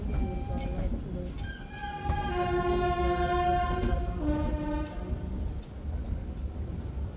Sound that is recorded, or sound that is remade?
recorded